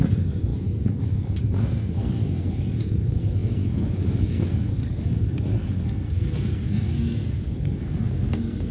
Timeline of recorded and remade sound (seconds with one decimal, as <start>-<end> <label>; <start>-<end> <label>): 0.0-8.7 remade